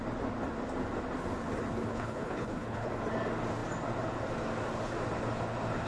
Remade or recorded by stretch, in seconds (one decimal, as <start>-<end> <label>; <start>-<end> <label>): 0.0-1.9 recorded; 1.9-2.9 remade; 2.9-5.9 recorded